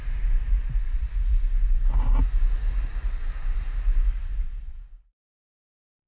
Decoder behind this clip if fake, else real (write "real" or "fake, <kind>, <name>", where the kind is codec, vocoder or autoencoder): fake, vocoder, BigVGAN v2